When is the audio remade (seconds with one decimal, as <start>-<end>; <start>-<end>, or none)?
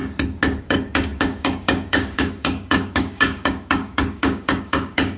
0.6-5.2